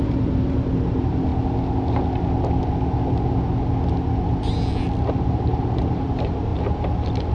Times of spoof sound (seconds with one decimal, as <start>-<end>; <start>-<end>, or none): 0.0-1.3; 5.1-6.5